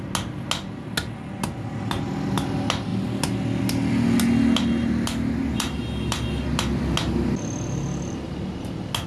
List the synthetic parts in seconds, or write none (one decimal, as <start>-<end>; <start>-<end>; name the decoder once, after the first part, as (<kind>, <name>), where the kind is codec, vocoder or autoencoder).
none